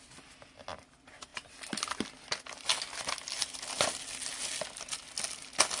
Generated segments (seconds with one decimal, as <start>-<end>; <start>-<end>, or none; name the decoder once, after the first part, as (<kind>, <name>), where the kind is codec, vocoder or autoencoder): none